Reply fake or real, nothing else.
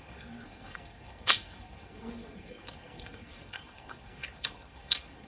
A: fake